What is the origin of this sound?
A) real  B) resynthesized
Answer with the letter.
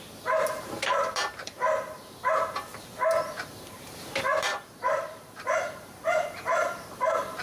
B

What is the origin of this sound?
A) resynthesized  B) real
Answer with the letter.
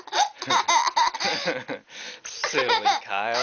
B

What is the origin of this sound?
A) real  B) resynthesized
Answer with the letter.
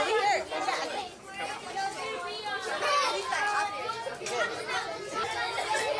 A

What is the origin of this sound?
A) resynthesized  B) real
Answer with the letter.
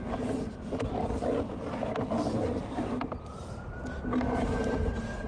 B